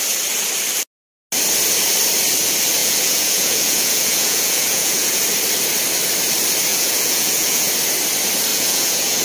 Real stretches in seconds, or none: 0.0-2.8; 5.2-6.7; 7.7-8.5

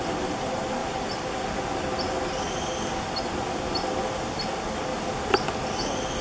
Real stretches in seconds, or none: 0.0-6.2

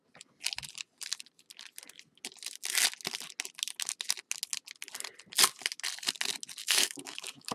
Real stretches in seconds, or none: 0.0-6.6

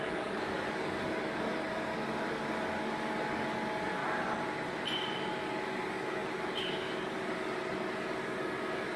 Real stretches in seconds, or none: 4.0-5.3